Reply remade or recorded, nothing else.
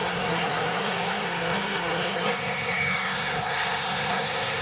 remade